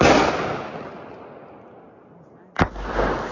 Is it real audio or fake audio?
real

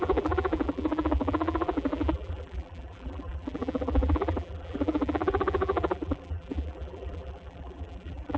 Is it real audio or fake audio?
fake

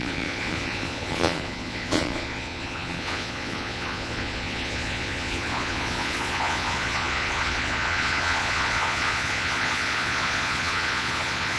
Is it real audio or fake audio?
fake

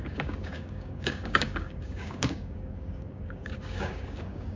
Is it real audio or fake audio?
fake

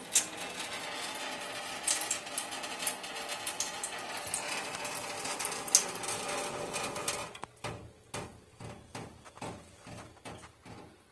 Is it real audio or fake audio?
real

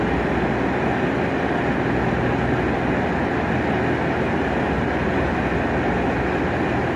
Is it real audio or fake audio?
real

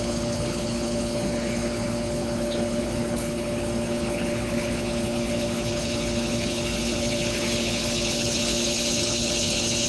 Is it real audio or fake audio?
fake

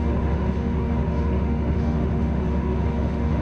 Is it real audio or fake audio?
fake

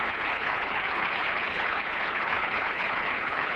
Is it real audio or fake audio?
fake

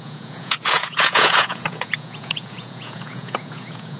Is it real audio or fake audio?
fake